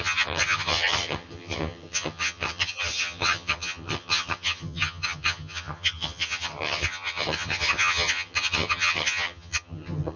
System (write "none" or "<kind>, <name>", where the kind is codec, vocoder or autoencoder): vocoder, HiFi-GAN